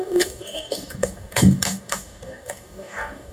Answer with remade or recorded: remade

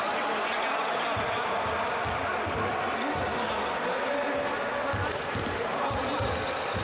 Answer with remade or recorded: recorded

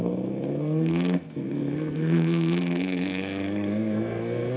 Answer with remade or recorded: remade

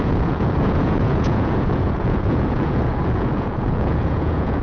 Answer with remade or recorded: remade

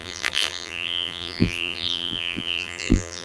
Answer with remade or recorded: remade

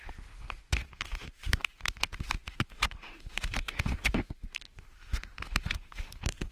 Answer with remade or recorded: remade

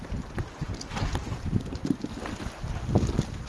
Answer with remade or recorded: recorded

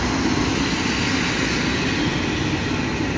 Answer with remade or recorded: recorded